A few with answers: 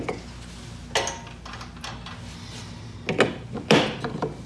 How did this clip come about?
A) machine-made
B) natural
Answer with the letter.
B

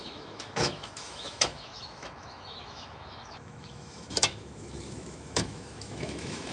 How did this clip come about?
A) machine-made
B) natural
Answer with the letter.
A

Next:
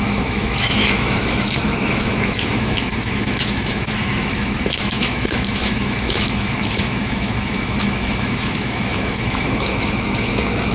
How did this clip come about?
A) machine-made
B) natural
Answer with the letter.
A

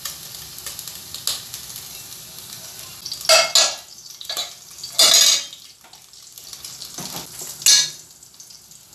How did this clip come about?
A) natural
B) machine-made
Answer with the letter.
A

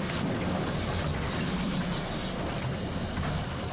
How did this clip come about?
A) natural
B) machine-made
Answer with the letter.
A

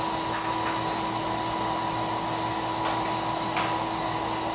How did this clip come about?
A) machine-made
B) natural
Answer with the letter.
B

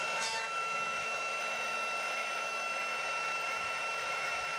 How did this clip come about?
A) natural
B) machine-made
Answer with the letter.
B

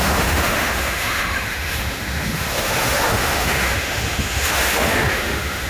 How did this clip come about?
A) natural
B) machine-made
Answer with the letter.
B